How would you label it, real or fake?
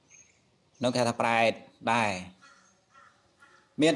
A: real